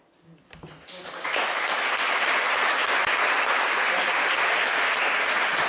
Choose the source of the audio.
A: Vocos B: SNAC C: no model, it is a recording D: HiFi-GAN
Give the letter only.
C